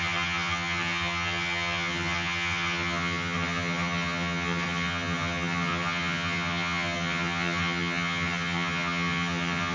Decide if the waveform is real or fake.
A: fake